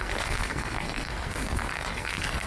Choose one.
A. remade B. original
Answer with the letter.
A